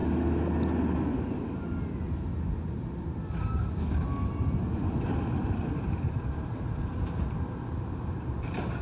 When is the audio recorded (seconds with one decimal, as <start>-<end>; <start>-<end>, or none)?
0.0-3.9